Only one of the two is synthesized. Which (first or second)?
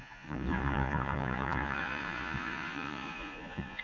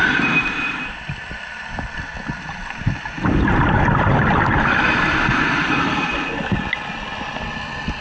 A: first